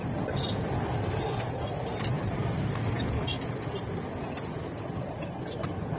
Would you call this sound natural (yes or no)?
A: yes